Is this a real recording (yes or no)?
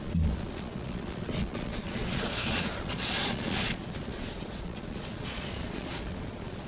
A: no